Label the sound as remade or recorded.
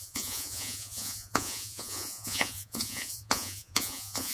remade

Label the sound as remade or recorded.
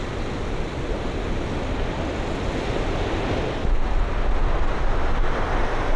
recorded